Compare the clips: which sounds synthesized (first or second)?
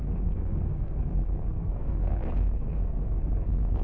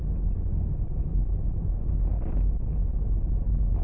first